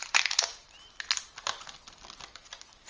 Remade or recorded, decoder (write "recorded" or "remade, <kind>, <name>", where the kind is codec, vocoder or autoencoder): recorded